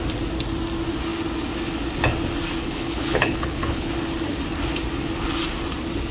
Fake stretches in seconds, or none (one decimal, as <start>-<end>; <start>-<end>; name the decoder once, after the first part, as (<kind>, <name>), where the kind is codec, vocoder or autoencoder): 2.6-3.9 (codec, HILCodec)